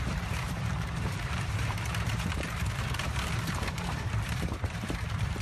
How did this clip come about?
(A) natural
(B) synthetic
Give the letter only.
B